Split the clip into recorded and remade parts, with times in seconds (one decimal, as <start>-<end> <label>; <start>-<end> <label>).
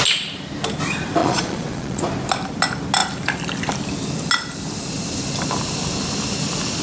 0.0-1.2 recorded; 1.2-2.0 remade; 2.0-6.8 recorded